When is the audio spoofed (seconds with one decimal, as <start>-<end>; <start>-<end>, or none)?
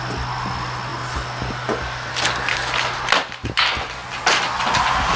none